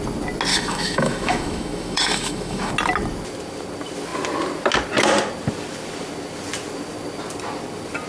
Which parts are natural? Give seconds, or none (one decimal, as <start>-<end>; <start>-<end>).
0.0-0.5; 2.7-8.1